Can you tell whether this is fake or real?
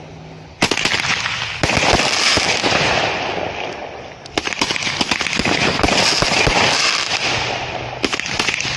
real